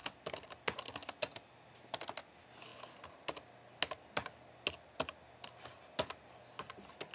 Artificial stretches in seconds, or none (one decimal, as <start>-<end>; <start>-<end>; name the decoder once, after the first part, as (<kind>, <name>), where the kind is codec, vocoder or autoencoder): none